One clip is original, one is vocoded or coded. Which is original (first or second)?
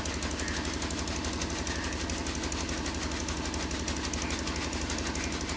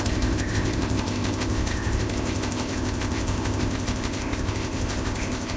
first